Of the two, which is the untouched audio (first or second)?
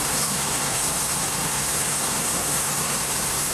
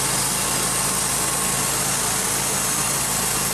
second